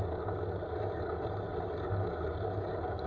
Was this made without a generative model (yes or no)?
yes